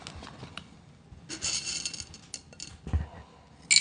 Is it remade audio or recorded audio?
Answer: recorded